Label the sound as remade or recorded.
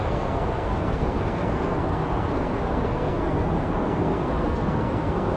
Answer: remade